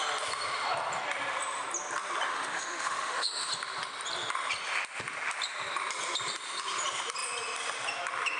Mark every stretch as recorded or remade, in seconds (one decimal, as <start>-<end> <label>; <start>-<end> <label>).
0.0-2.3 recorded; 2.3-3.5 remade; 3.5-8.4 recorded